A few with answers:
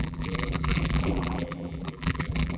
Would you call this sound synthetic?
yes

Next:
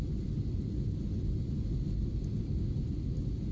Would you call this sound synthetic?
no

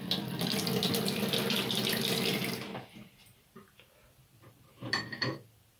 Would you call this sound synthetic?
yes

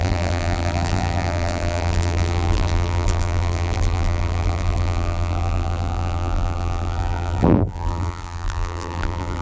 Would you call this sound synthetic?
yes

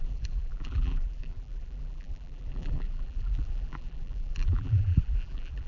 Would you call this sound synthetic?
yes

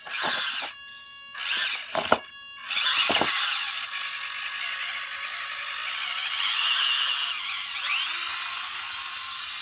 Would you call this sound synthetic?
no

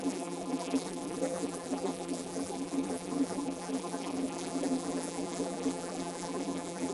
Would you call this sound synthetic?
yes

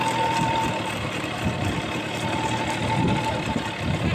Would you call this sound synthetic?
no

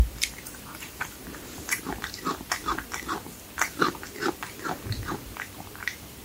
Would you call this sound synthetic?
yes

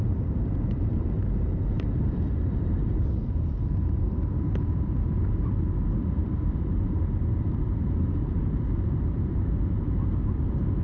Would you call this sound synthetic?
yes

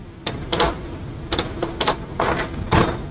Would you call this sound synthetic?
yes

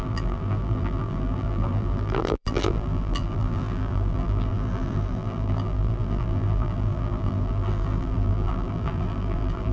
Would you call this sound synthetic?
yes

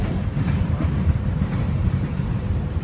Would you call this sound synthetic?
yes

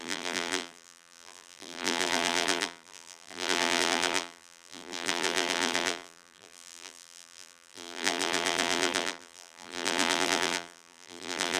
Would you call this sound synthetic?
yes